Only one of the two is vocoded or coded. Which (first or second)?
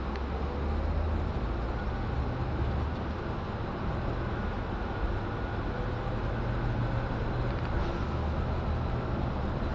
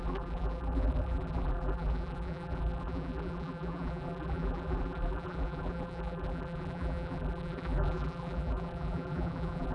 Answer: second